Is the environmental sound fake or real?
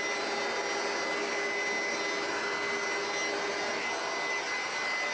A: real